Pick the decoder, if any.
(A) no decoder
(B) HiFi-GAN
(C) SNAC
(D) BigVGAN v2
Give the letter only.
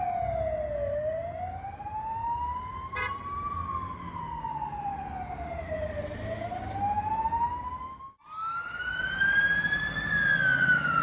A